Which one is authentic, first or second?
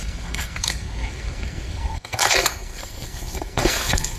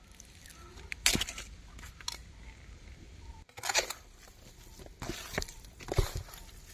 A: second